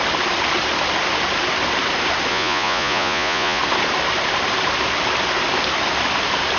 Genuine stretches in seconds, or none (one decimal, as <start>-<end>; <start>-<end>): 0.0-2.3; 3.6-6.6